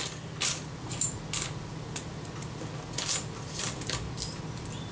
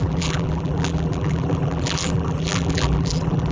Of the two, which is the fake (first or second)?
second